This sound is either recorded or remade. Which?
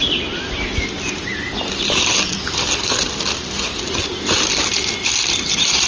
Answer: recorded